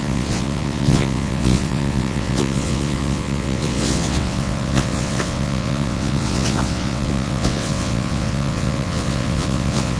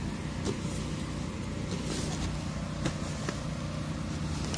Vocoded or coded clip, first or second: first